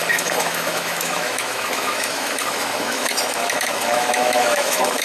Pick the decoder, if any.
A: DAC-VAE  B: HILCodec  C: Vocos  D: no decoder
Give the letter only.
A